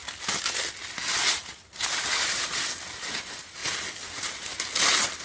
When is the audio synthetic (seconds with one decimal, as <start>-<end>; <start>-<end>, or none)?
none